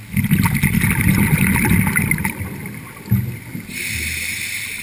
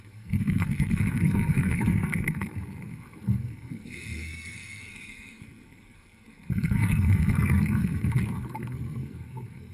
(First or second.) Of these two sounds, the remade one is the second